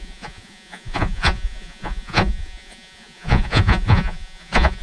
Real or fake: fake